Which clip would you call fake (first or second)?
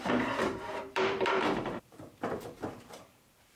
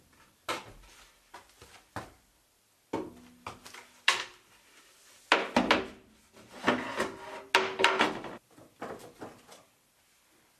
first